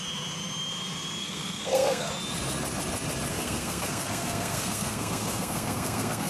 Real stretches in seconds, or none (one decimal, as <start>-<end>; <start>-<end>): 0.0-1.2; 2.1-3.3